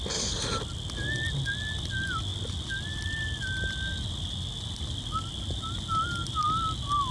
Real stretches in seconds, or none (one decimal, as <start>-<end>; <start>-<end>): 0.0-7.1